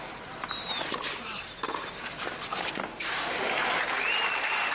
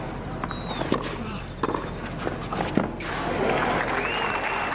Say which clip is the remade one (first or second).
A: first